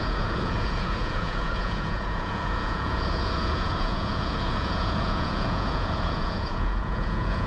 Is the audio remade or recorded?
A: remade